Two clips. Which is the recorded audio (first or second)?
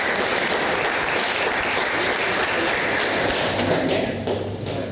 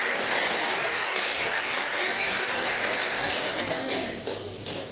first